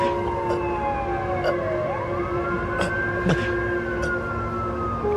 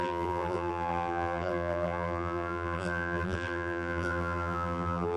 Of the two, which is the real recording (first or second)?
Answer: first